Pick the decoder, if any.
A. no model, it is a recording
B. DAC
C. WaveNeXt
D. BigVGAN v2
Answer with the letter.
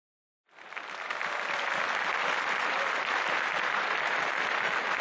A